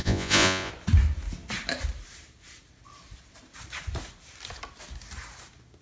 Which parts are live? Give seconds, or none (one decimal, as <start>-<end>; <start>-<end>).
0.7-5.8